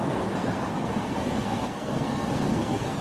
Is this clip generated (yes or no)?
yes